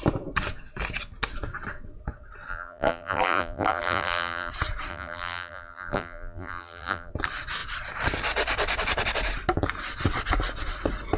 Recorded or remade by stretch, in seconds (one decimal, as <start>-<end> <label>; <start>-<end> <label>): 0.0-2.5 recorded; 2.5-4.5 remade; 4.5-4.9 recorded; 4.9-7.1 remade; 7.1-11.2 recorded